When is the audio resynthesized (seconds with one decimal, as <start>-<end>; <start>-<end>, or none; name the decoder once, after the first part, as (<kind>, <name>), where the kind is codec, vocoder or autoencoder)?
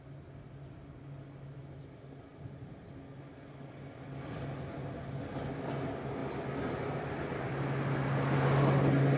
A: none